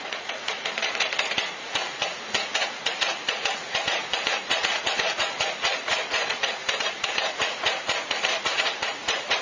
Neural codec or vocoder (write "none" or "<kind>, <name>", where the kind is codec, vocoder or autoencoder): vocoder, Vocos